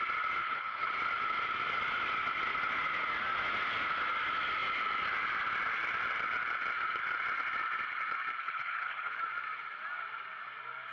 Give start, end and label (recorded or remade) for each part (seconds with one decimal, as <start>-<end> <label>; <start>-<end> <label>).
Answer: 0.0-0.4 recorded; 0.4-0.9 remade; 0.9-8.4 recorded; 8.4-9.1 remade; 9.1-10.9 recorded

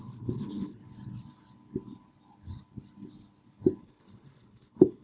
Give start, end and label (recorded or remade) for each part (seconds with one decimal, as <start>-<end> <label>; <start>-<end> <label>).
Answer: 0.0-0.8 remade; 0.8-3.8 recorded; 3.8-5.0 remade